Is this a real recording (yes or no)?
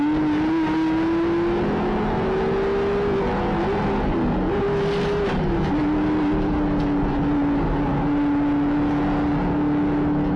yes